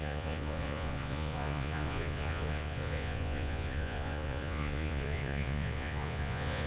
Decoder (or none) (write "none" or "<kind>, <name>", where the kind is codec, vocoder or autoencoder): vocoder, Vocos